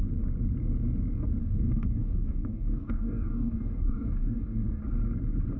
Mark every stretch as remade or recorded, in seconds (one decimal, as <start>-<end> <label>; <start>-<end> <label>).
0.0-1.4 recorded; 1.4-4.8 remade; 4.8-5.6 recorded

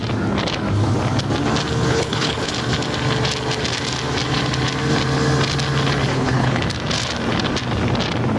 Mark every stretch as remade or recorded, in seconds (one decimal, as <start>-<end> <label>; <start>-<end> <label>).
0.0-1.9 recorded; 1.9-2.5 remade; 2.5-6.1 recorded; 6.1-6.6 remade; 6.6-8.4 recorded

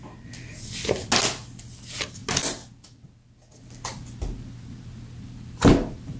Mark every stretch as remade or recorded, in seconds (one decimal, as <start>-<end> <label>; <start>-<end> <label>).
0.0-6.2 recorded

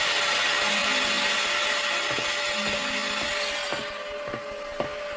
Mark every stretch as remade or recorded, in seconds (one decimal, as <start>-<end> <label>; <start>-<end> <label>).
0.0-5.2 recorded

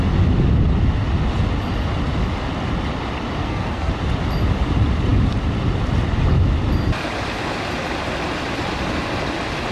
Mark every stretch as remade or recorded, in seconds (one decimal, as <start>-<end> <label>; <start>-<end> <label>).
0.0-3.4 recorded; 3.4-3.9 remade; 3.9-9.7 recorded

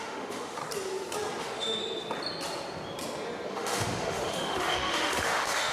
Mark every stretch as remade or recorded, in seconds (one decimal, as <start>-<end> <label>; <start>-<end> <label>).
0.0-0.6 remade; 0.6-1.4 recorded; 1.4-1.8 remade; 1.8-3.5 recorded; 3.5-5.7 remade

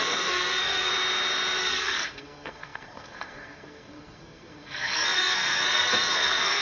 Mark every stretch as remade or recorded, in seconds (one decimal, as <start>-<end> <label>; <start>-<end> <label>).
0.0-0.9 remade; 0.9-1.6 recorded; 1.6-6.6 remade

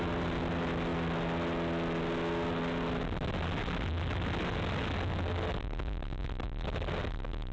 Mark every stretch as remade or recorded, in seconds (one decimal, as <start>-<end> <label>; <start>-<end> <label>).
0.0-7.5 recorded